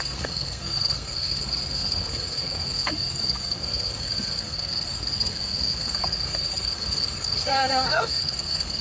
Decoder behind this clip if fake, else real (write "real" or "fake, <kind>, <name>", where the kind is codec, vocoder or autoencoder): fake, codec, SNAC